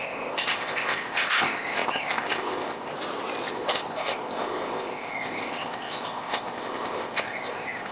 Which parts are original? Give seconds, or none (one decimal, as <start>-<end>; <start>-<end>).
2.9-3.5